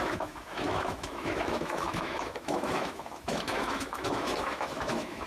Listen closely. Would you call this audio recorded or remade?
remade